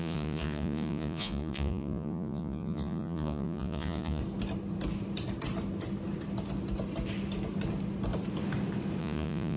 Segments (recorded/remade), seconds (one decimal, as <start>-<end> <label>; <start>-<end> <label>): 0.0-4.2 remade; 4.2-9.0 recorded; 9.0-9.6 remade